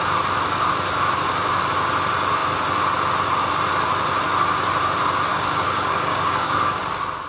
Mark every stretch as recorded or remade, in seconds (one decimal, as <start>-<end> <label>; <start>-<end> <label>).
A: 0.0-5.3 recorded; 5.3-6.8 remade; 6.8-7.3 recorded